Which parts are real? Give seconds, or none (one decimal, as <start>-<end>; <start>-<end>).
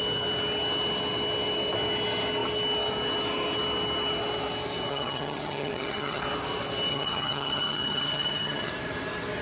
0.0-4.9; 6.2-6.9; 8.7-9.4